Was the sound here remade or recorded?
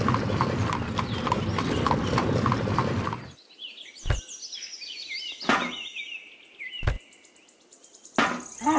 recorded